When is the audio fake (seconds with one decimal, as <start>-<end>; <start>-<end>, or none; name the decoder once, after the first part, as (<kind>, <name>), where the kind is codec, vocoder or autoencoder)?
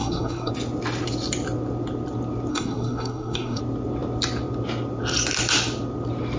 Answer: 0.0-0.5 (codec, SNAC); 2.5-3.6